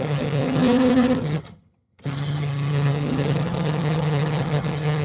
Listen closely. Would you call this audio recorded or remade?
remade